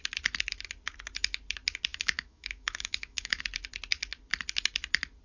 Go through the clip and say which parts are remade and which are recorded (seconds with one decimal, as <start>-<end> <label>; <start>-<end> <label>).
0.0-1.9 recorded; 1.9-3.4 remade; 3.4-5.2 recorded